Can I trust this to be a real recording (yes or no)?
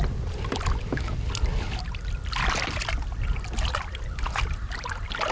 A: yes